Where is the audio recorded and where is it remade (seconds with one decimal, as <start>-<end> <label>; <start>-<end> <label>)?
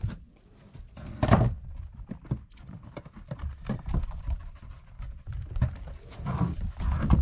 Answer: 0.0-7.2 recorded